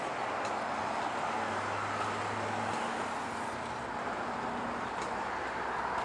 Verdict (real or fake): real